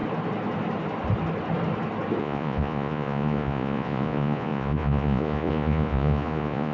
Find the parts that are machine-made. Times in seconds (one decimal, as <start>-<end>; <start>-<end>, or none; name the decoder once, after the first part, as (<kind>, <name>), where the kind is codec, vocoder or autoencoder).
2.2-6.7 (vocoder, Vocos)